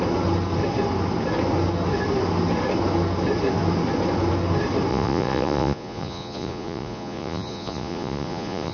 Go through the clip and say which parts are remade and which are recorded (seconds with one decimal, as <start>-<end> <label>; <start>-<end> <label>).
0.0-4.9 recorded; 4.9-8.7 remade